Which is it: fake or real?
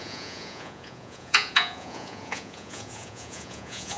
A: fake